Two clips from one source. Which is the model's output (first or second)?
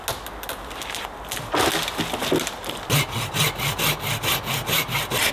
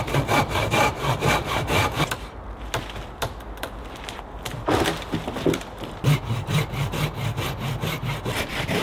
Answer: second